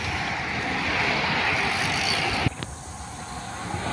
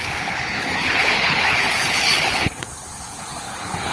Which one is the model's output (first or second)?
second